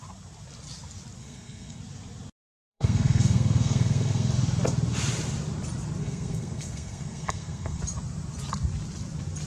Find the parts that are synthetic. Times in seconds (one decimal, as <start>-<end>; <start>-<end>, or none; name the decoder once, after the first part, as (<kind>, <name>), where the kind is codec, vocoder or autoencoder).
1.2-1.8 (codec, SNAC); 2.4-4.3; 6.0-7.8